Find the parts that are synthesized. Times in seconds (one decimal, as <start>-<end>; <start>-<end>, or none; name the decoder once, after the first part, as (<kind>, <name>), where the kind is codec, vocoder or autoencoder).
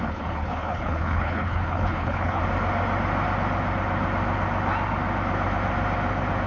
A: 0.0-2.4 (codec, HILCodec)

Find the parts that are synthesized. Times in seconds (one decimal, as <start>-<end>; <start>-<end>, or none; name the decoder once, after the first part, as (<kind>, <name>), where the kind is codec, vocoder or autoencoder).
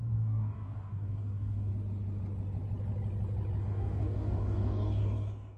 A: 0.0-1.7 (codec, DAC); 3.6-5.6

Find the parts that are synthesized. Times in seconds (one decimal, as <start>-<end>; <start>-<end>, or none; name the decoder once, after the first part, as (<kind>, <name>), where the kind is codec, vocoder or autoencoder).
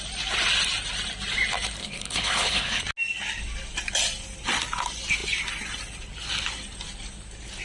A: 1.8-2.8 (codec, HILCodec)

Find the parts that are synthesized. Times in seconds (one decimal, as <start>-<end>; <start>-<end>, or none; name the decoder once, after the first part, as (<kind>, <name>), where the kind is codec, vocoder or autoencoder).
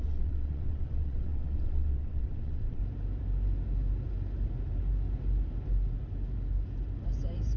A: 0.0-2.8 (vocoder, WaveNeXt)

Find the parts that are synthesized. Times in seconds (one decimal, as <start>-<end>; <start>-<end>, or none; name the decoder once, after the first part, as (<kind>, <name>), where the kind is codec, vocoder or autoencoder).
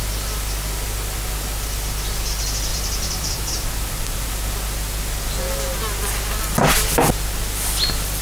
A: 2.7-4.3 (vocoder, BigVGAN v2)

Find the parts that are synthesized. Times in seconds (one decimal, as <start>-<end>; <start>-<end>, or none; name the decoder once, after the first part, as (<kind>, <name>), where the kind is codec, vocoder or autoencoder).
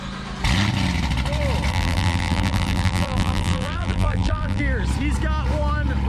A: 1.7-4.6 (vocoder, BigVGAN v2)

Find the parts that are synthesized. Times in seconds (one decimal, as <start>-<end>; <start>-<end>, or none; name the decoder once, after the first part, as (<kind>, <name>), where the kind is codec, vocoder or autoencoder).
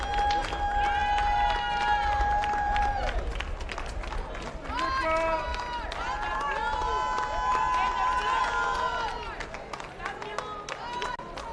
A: none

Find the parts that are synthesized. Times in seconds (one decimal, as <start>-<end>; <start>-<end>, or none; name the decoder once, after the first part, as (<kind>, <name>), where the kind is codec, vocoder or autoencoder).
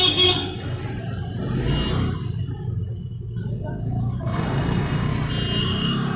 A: 0.0-0.8 (codec, DAC); 3.5-5.1; 5.6-6.2